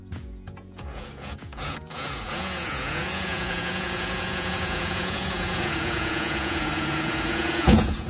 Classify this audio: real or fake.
fake